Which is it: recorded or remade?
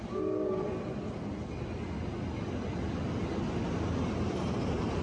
recorded